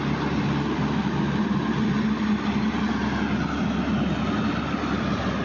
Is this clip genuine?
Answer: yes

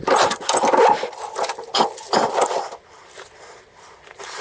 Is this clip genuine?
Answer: yes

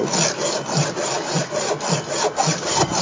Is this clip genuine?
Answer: yes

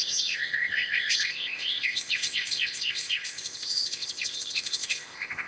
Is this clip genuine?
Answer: no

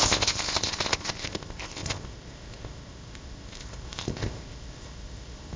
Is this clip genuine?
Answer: no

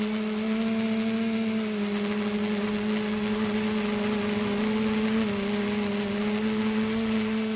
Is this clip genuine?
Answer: yes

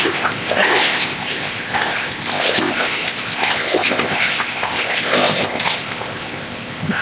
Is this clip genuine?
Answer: no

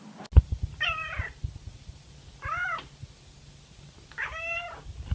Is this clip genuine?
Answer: yes